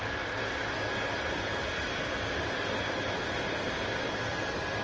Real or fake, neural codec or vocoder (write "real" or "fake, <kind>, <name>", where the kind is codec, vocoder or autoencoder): real